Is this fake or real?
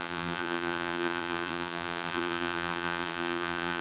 fake